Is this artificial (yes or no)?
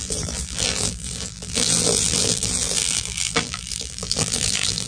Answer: yes